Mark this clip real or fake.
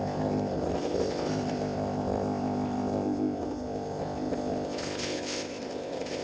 fake